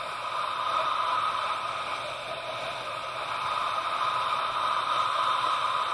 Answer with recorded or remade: recorded